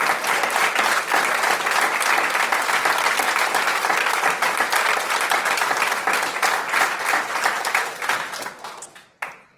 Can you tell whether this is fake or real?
real